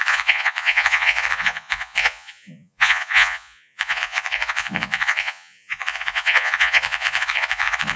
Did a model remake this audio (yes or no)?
yes